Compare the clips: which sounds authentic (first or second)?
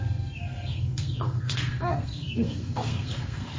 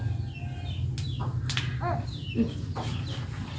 second